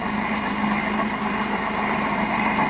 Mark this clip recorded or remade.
recorded